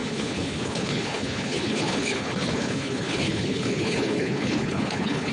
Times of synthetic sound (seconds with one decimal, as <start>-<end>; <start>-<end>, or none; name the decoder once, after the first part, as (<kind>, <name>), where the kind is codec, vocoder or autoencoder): 0.0-5.3 (codec, HILCodec)